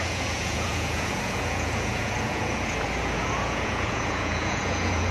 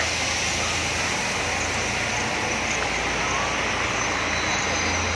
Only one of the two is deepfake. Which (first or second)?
first